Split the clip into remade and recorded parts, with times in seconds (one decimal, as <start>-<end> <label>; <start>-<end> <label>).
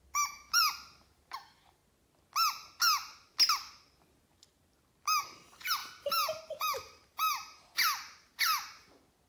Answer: 0.0-1.8 remade; 1.8-5.2 recorded; 5.2-5.8 remade; 5.8-6.4 recorded; 6.4-9.3 remade